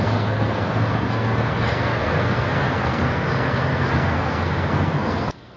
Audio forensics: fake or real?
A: fake